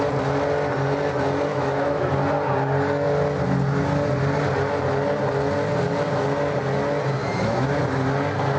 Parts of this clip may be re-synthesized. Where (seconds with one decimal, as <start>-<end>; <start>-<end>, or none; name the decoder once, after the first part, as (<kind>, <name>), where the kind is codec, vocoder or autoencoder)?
1.5-2.1 (autoencoder, DAC-VAE); 7.2-7.8

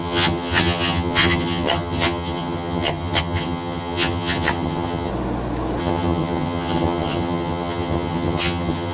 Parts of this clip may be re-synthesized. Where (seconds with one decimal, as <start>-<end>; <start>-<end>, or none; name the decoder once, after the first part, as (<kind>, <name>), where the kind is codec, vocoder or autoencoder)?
0.0-5.1 (vocoder, HiFi-GAN); 5.8-8.9

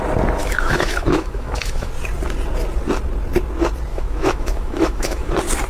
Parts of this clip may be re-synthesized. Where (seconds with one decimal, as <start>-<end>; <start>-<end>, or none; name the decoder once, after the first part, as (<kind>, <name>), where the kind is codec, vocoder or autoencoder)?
0.4-1.9 (autoencoder, DAC-VAE); 3.9-5.3

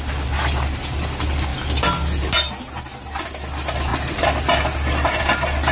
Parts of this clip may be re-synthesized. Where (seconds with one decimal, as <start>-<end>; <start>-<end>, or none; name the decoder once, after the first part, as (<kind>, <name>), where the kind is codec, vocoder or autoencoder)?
none